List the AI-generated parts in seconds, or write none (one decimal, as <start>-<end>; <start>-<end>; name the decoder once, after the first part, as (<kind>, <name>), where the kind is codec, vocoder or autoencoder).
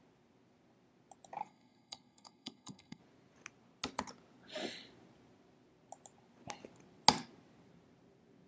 1.4-3.0 (codec, SNAC)